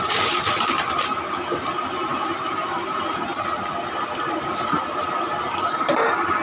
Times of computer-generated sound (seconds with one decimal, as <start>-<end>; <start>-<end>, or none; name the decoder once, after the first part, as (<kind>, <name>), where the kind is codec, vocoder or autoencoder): none